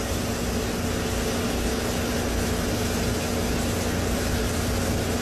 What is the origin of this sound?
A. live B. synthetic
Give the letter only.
A